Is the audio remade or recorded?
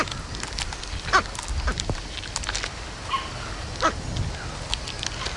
recorded